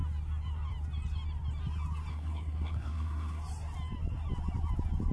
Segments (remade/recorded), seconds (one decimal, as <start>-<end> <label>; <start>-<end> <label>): 0.0-2.1 recorded; 2.1-3.4 remade; 3.4-5.1 recorded